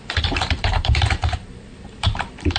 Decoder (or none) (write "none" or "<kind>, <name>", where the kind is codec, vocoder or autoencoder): vocoder, BigVGAN v2